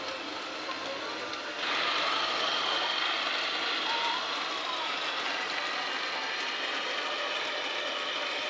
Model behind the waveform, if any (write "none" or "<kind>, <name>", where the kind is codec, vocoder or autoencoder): none